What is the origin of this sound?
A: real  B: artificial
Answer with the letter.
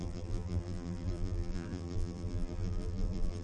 B